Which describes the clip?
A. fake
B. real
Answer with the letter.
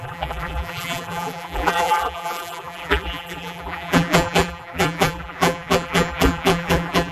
A